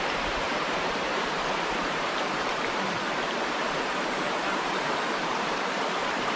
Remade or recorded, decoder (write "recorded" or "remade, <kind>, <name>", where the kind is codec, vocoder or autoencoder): remade, vocoder, BigVGAN v2